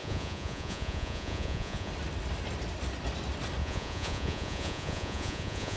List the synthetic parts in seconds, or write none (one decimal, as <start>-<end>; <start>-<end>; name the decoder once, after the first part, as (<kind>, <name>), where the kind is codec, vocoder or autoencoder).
0.0-1.9 (vocoder, Vocos); 3.6-5.8